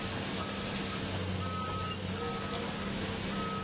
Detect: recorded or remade recorded